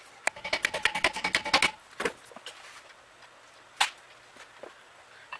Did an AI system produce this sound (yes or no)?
no